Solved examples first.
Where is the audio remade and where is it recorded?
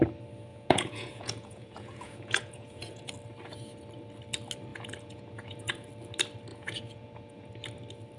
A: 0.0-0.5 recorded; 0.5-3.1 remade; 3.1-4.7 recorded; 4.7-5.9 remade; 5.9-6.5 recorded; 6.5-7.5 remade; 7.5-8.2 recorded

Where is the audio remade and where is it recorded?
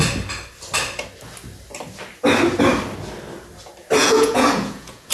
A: 0.0-4.0 recorded; 4.0-5.1 remade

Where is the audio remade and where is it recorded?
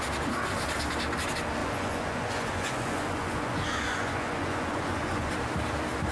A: 0.0-1.6 recorded; 1.6-5.3 remade; 5.3-6.1 recorded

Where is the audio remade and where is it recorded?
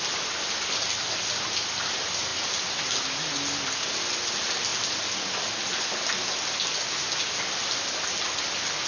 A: 0.0-8.9 recorded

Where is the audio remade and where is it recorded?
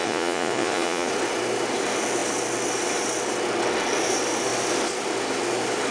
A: 0.0-1.1 remade; 1.1-5.9 recorded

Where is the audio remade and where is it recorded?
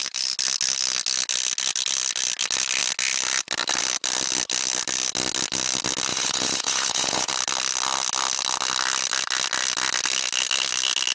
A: 0.0-6.1 recorded; 6.1-7.3 remade; 7.3-11.1 recorded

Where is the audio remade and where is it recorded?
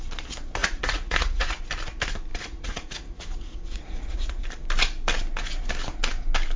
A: 0.0-0.6 recorded; 0.6-1.6 remade; 1.6-2.3 recorded; 2.3-4.4 remade; 4.4-6.6 recorded